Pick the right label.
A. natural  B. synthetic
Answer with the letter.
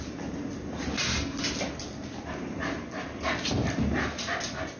A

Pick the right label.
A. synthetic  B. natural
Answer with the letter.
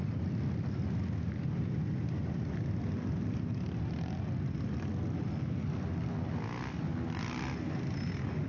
B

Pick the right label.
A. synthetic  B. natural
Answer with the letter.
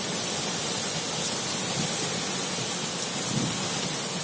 B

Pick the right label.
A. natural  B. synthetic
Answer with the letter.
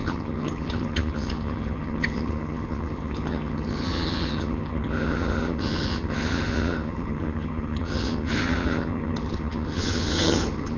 B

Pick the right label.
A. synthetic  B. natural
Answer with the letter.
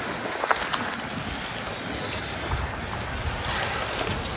B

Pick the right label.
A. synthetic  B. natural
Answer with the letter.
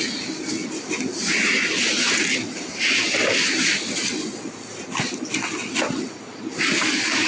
B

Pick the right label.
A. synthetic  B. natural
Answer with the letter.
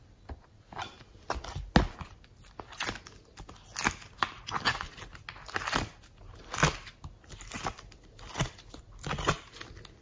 B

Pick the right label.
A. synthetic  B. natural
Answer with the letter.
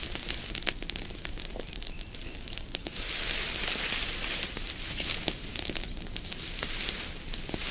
B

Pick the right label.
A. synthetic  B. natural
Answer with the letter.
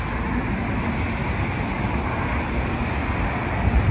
B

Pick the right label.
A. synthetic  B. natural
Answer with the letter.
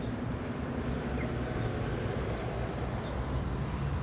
B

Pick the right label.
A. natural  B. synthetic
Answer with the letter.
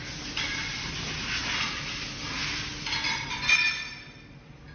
A